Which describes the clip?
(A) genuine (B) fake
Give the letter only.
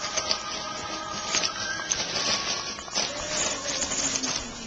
A